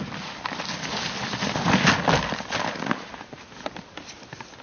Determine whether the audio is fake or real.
real